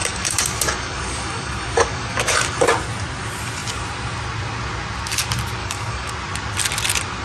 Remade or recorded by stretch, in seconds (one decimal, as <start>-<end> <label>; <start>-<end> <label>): 0.0-2.7 remade; 2.7-5.6 recorded; 5.6-6.1 remade; 6.1-7.2 recorded